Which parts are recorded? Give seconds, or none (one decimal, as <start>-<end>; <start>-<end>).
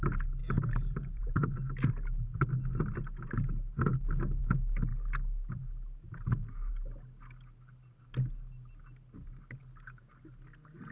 0.0-0.4; 1.9-10.9